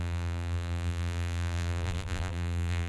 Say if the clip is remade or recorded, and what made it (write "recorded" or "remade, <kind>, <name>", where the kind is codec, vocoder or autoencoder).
remade, vocoder, BigVGAN v2